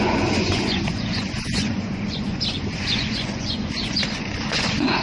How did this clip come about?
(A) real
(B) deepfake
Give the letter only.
B